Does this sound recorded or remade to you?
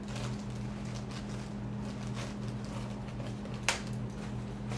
recorded